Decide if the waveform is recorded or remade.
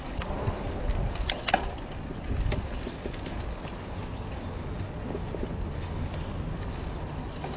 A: recorded